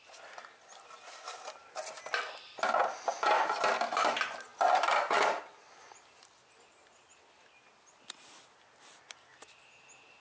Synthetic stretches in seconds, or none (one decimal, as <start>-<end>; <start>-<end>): none